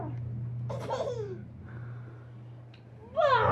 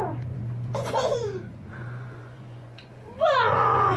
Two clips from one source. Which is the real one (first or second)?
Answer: first